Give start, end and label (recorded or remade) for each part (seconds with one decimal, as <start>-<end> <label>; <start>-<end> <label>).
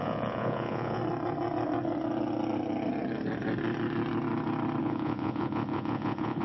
0.0-1.0 remade; 1.0-4.8 recorded; 4.8-6.4 remade